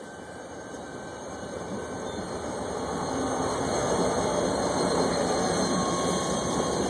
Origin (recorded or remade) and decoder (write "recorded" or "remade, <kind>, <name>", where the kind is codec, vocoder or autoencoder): remade, vocoder, BigVGAN v2